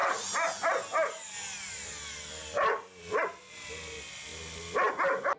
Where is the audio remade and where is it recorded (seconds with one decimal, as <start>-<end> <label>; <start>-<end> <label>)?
0.0-5.4 recorded